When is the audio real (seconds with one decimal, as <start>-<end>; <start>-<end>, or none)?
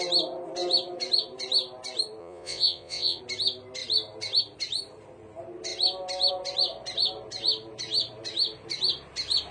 0.0-2.2; 3.2-9.5